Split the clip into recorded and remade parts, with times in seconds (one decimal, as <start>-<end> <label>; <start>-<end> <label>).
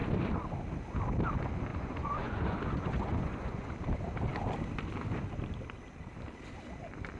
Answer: 0.0-1.7 recorded; 1.7-3.7 remade; 3.7-7.2 recorded